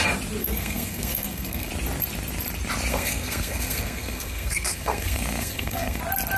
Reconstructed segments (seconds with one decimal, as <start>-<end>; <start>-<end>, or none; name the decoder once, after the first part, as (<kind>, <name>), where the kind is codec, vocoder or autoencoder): 0.4-1.7 (codec, SNAC); 2.9-6.0